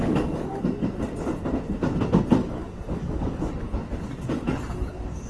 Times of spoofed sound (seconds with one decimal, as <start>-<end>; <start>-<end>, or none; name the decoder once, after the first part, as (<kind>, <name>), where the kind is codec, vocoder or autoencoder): 0.0-0.6 (codec, DAC); 2.4-3.5